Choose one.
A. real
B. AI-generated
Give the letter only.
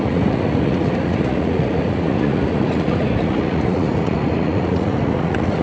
B